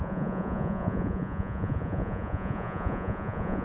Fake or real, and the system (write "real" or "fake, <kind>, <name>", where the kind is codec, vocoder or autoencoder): fake, vocoder, Vocos